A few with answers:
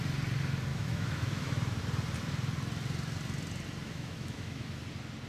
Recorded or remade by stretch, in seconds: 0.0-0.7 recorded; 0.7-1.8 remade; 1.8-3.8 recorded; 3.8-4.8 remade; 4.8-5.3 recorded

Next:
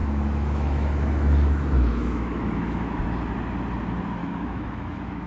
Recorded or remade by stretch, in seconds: 0.0-3.0 remade; 3.0-4.2 recorded; 4.2-5.3 remade

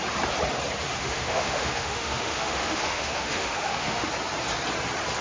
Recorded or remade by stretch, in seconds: 0.0-1.0 recorded; 1.0-4.1 remade; 4.1-5.2 recorded

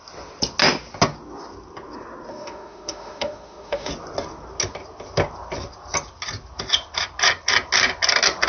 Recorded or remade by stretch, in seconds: 0.0-2.3 recorded; 2.3-3.9 remade; 3.9-8.5 recorded

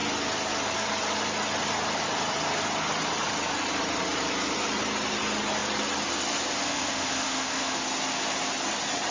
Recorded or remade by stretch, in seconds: 0.0-6.6 recorded; 6.6-7.8 remade; 7.8-9.1 recorded

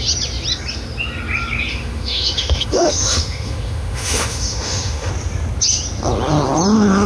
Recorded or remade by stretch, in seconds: 0.0-1.7 recorded; 1.7-5.1 remade; 5.1-7.1 recorded